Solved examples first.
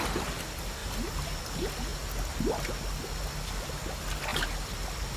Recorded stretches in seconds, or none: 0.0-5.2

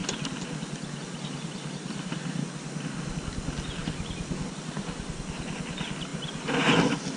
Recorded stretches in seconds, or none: 0.0-7.2

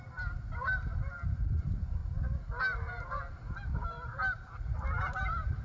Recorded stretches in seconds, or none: 0.0-4.2

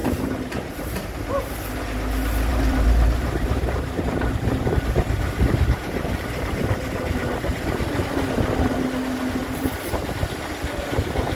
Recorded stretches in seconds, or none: 0.7-2.5; 7.2-11.4